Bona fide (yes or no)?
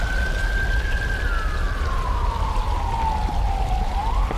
yes